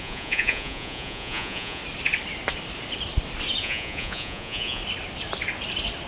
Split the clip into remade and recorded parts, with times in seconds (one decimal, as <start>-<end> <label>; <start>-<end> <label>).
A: 0.0-1.8 remade; 1.8-3.6 recorded; 3.6-4.8 remade; 4.8-6.1 recorded